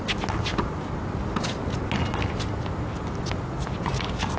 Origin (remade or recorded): recorded